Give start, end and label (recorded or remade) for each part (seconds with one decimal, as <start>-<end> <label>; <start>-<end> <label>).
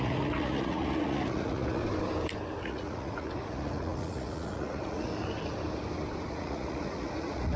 0.0-1.8 remade; 1.8-2.6 recorded; 2.6-5.1 remade; 5.1-6.3 recorded; 6.3-7.6 remade